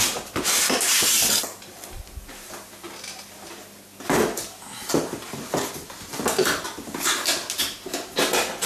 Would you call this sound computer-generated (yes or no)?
no